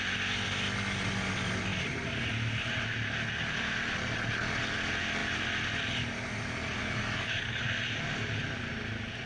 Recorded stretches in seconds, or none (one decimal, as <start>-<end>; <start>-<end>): 0.0-6.8; 7.6-9.3